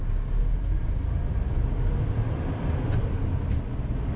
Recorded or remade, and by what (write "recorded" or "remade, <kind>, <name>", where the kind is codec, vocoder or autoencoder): recorded